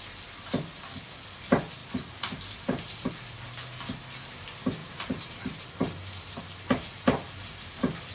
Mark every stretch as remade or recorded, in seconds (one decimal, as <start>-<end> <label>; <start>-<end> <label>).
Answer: 0.0-1.8 recorded; 1.8-3.1 remade; 3.1-4.8 recorded; 4.8-6.4 remade; 6.4-8.1 recorded